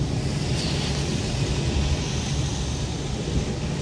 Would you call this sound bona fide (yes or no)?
yes